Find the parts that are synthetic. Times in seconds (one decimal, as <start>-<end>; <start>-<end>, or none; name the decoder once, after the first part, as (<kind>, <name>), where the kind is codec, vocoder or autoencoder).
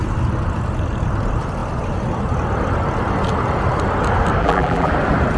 4.4-4.9 (vocoder, BigVGAN v2)